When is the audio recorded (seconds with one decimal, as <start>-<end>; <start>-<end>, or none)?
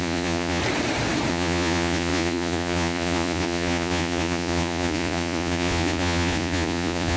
0.6-1.3